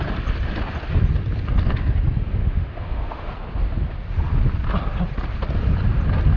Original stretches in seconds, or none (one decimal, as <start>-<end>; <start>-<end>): 0.0-2.4; 3.3-6.4